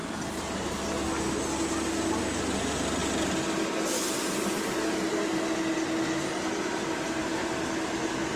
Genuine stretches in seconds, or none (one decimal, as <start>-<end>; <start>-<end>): 0.0-8.4